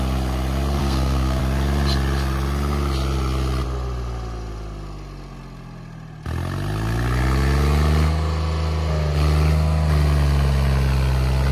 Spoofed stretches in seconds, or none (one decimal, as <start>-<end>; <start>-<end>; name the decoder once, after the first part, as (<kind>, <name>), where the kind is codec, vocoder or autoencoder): 0.8-1.4 (codec, SNAC)